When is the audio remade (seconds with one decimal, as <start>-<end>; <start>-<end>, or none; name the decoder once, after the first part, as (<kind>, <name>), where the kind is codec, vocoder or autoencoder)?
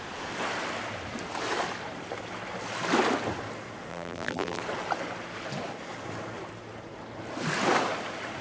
3.9-4.6 (vocoder, BigVGAN v2)